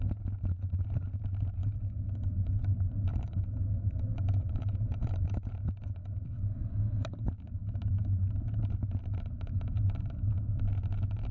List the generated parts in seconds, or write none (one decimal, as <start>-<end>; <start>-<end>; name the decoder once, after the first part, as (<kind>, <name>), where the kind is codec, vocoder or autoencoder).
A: 1.6-2.6 (autoencoder, DAC-VAE); 3.1-5.5; 6.0-6.7